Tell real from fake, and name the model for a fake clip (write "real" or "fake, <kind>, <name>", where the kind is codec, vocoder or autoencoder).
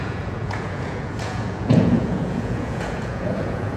fake, vocoder, Vocos